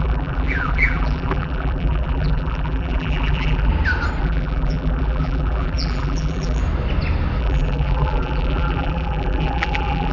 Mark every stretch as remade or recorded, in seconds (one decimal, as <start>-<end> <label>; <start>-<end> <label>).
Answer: 0.0-3.7 remade; 3.7-4.2 recorded; 4.2-6.6 remade; 6.6-7.4 recorded; 7.4-10.1 remade